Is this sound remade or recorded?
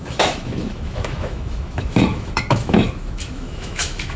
remade